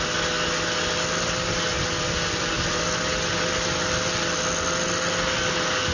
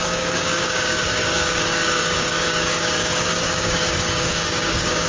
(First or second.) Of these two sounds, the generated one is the second